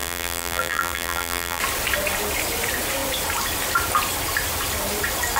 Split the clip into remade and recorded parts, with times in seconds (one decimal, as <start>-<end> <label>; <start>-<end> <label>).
0.0-1.6 remade; 1.6-5.4 recorded